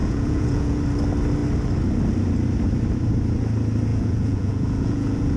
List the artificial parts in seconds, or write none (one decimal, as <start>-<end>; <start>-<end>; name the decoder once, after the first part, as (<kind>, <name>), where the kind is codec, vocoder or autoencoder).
0.0-0.8 (vocoder, Vocos); 3.9-5.4